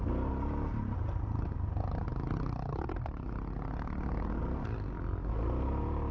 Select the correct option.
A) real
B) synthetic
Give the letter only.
A